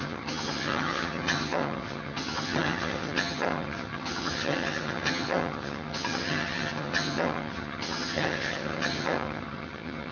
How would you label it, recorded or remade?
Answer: remade